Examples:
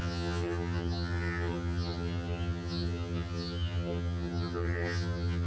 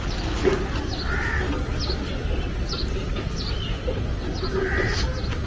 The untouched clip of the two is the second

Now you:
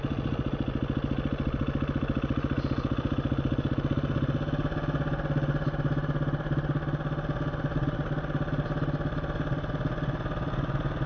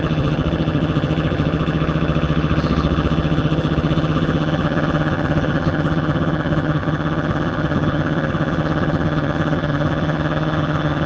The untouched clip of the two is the first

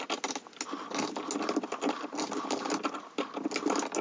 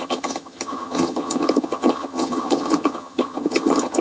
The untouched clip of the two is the first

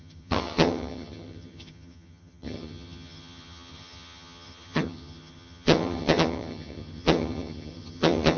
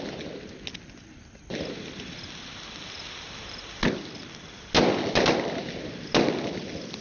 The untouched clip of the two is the second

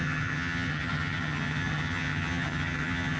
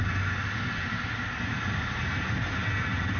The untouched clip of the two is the second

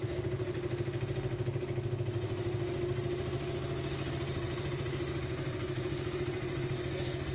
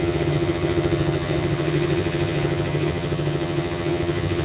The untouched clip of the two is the first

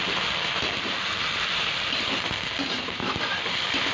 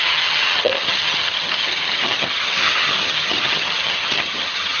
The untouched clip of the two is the first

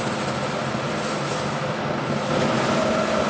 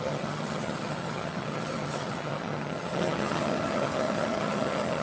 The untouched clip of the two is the first